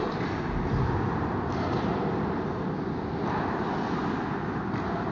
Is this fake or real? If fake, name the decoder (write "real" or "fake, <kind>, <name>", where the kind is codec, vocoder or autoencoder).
real